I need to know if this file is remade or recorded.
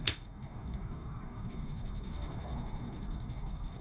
remade